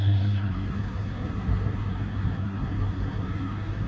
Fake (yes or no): yes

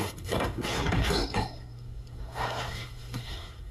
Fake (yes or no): yes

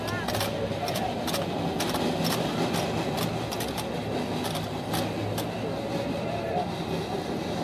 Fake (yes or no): no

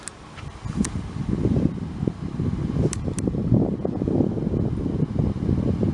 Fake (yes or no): no